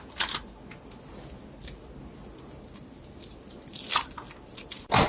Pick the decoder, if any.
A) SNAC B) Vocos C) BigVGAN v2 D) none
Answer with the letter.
D